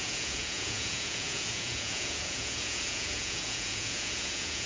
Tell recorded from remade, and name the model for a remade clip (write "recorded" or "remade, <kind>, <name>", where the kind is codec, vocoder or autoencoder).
remade, vocoder, Vocos